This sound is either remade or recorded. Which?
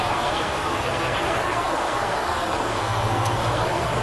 remade